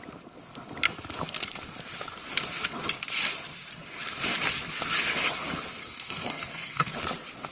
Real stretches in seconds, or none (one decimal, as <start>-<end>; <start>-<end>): 0.0-5.8; 6.9-7.5